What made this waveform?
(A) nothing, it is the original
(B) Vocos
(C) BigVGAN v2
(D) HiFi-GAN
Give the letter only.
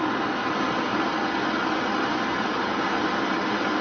A